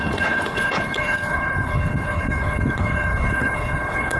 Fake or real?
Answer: fake